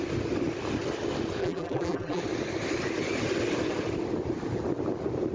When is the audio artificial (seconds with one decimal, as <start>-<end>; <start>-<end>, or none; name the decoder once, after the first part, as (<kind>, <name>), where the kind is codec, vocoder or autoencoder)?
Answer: 1.4-2.2 (vocoder, BigVGAN v2)